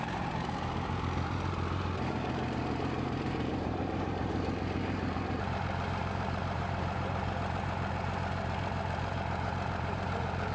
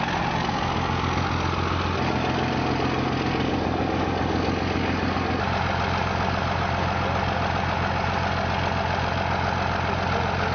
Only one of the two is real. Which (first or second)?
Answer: second